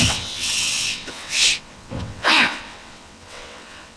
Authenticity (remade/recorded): remade